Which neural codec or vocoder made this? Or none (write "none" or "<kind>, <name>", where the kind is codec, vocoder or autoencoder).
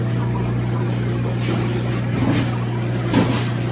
none